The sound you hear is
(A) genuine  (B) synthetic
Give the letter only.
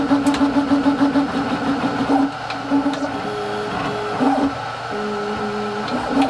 A